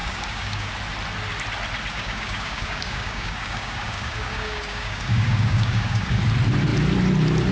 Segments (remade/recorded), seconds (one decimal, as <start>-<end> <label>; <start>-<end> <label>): 0.0-0.7 remade; 0.7-1.9 recorded; 1.9-6.2 remade; 6.2-7.5 recorded